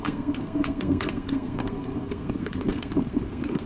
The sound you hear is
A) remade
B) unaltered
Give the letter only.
A